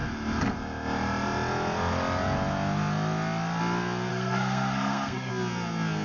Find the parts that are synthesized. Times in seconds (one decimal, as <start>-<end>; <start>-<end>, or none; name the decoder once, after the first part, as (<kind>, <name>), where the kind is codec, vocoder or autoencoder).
4.1-5.3 (codec, SNAC)